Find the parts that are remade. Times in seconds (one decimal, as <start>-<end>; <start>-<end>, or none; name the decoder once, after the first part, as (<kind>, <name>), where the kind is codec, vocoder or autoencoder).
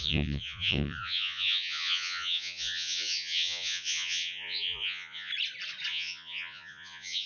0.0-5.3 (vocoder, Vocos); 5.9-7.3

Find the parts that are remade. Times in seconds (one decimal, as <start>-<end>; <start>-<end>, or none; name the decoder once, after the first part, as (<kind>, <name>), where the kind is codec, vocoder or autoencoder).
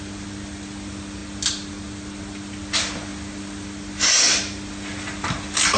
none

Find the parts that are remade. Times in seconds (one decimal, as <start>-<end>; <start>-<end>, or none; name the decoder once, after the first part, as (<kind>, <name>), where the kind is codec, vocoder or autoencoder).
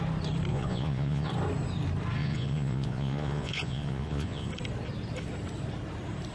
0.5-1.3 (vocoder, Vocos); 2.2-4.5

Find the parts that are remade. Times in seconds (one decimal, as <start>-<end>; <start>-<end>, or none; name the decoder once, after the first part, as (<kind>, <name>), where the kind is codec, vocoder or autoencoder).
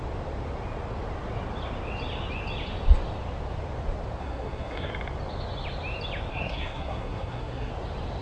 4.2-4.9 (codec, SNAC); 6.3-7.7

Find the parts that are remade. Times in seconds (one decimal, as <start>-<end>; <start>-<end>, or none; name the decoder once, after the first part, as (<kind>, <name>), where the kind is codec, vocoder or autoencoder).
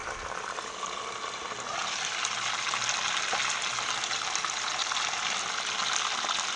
none